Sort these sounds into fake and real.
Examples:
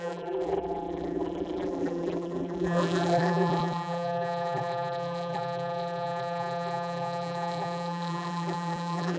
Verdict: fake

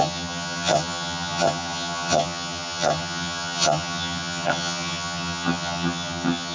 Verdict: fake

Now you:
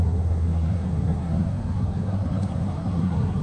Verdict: fake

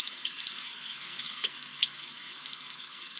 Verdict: fake